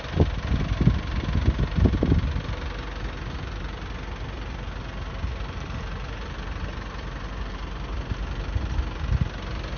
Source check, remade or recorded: recorded